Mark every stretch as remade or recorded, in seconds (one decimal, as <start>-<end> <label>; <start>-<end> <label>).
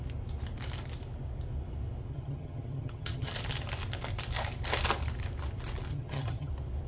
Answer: 0.0-2.1 recorded; 2.1-3.3 remade; 3.3-5.9 recorded; 5.9-6.5 remade; 6.5-6.9 recorded